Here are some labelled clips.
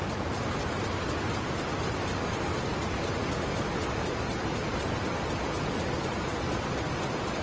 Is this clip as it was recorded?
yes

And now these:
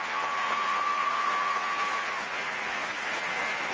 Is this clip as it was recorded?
no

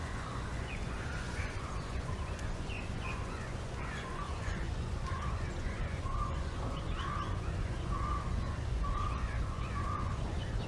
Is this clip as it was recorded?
no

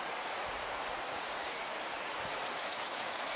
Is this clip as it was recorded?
no